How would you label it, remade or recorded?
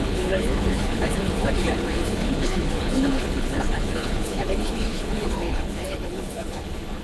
remade